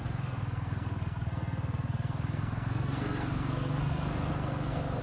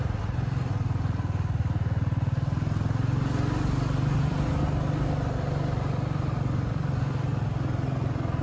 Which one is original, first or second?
second